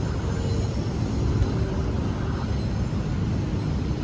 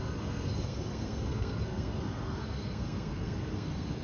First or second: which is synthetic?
second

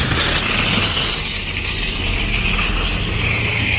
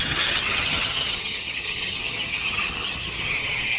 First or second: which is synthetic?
second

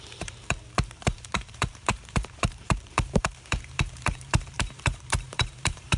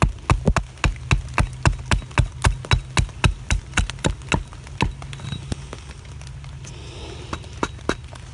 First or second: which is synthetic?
first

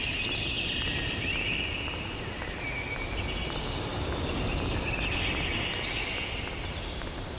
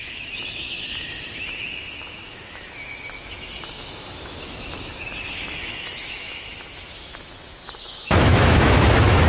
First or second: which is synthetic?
second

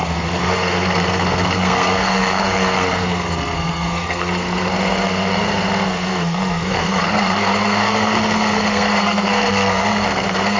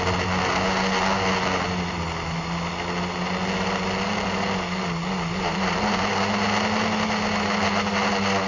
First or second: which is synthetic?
first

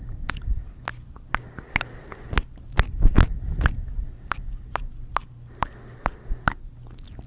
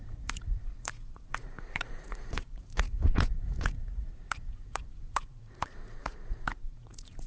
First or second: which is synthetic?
second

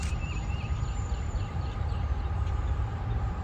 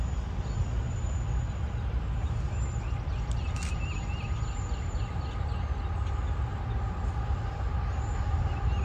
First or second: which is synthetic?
first